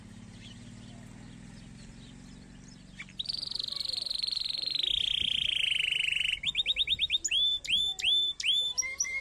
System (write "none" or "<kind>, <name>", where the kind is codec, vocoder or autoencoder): none